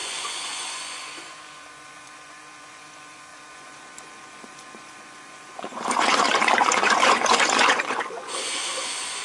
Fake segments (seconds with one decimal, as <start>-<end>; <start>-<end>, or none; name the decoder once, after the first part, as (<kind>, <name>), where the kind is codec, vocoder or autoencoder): 0.0-9.2 (vocoder, Vocos)